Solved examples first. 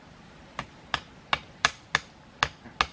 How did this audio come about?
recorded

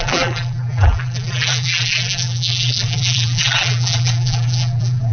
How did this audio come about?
remade